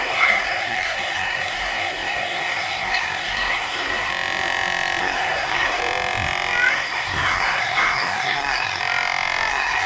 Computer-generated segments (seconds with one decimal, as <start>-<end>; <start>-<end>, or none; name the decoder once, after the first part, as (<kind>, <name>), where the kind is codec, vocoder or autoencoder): 0.0-4.1 (codec, SNAC); 5.0-5.8; 6.7-8.8; 9.5-9.9